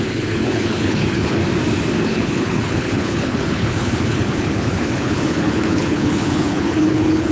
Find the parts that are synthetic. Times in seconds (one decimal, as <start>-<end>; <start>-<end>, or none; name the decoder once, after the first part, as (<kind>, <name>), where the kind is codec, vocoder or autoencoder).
0.0-1.4 (codec, HILCodec); 2.0-7.3